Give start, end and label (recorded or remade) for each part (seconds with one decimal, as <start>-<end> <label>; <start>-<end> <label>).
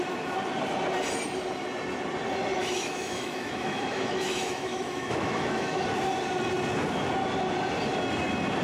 0.0-2.6 recorded; 2.6-5.8 remade; 5.8-8.6 recorded